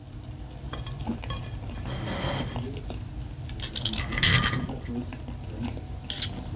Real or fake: real